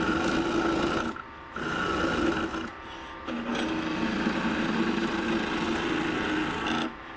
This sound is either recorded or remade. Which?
recorded